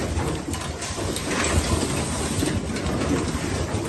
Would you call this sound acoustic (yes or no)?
yes